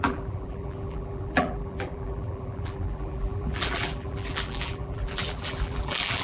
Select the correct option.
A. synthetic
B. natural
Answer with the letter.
A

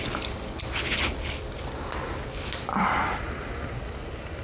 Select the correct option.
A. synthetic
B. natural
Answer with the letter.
B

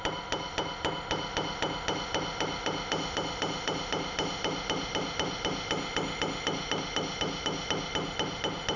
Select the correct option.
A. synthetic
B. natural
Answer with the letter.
B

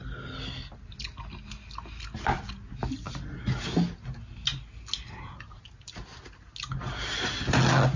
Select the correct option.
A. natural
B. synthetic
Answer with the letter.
A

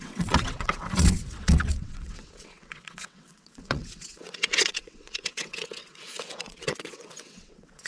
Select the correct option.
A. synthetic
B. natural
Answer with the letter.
A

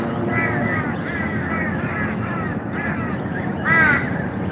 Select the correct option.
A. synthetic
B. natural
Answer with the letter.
B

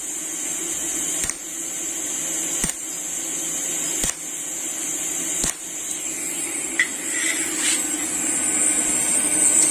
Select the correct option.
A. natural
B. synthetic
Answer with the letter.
A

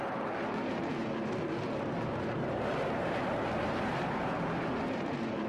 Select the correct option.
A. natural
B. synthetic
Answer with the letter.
B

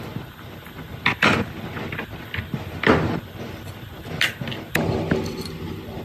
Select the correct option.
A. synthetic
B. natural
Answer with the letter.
B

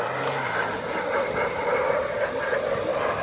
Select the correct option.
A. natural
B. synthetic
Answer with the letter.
A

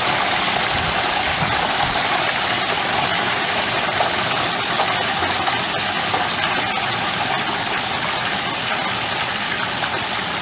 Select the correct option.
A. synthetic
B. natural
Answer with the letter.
B